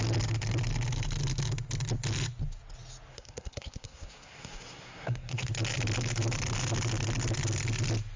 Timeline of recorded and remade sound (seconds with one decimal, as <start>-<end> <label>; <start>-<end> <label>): 0.0-3.1 recorded; 3.1-5.5 remade; 5.5-8.2 recorded